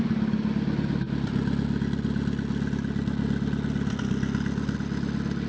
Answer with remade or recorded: recorded